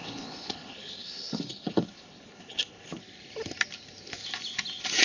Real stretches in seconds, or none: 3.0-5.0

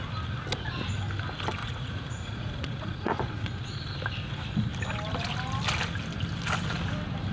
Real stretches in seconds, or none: 0.0-1.6; 3.7-7.3

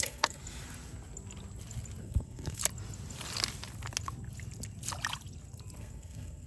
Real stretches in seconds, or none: 0.4-2.0; 2.6-5.8

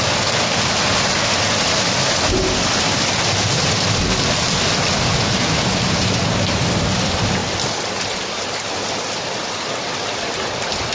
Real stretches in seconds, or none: 0.0-10.9

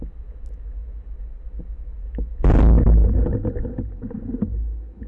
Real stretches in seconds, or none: 0.0-3.0

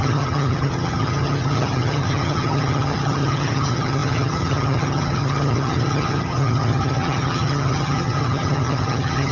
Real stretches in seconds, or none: none